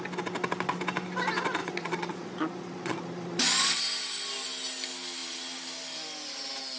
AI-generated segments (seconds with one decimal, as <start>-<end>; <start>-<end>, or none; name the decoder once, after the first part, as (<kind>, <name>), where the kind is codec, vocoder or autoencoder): 1.6-3.8 (vocoder, Vocos)